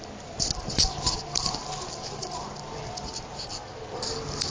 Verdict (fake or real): real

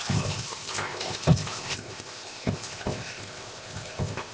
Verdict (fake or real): fake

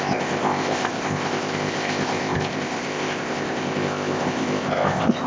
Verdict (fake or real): fake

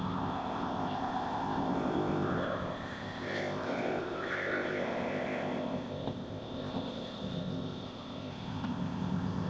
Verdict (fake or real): fake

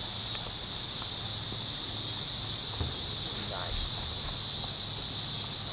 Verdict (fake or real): real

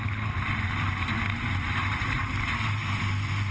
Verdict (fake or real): real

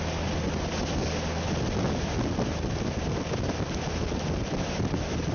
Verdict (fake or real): real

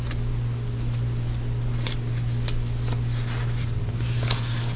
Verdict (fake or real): real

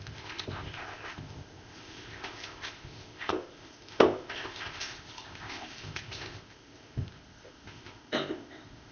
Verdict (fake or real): fake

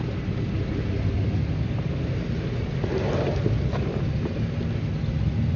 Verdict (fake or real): real